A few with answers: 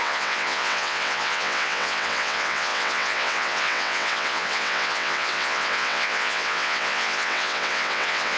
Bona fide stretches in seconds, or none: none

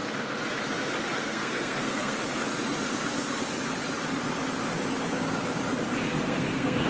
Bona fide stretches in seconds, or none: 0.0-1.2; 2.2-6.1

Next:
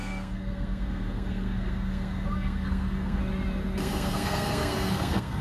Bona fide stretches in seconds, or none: 3.2-3.8